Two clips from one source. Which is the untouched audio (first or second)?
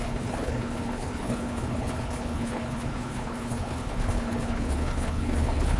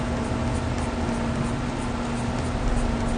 second